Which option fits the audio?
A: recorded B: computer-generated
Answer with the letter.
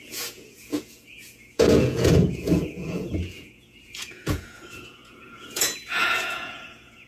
B